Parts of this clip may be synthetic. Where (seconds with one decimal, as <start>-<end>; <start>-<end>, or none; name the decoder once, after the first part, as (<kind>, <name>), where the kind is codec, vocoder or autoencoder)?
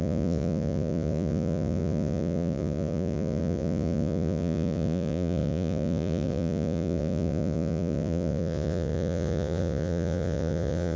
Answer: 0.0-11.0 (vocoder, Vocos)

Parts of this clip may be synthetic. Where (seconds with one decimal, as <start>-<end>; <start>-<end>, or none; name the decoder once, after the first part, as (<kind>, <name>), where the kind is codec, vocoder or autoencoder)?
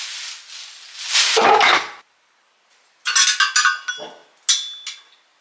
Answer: none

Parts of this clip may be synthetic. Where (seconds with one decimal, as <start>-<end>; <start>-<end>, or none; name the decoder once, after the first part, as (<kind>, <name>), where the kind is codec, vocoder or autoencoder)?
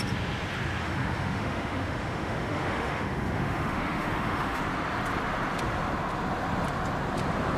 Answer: 0.8-4.6 (autoencoder, DAC-VAE)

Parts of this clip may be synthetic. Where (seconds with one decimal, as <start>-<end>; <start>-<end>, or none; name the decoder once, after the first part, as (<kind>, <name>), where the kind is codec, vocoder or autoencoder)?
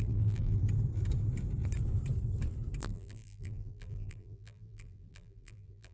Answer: 0.0-0.6 (vocoder, BigVGAN v2); 2.8-5.9